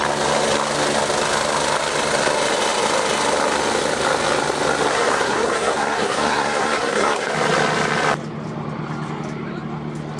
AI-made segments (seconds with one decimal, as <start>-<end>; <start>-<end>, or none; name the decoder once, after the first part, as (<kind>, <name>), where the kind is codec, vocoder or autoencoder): 4.9-7.3 (codec, SNAC)